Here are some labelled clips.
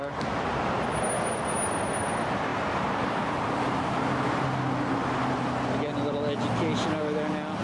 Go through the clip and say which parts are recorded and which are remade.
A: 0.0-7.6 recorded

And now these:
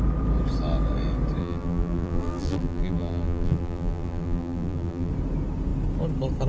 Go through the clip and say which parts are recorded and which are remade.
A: 0.0-1.4 recorded; 1.4-5.1 remade; 5.1-6.5 recorded

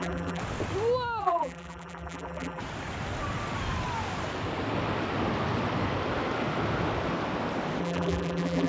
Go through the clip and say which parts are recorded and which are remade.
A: 0.0-0.4 remade; 0.4-1.2 recorded; 1.2-2.6 remade; 2.6-7.8 recorded; 7.8-8.7 remade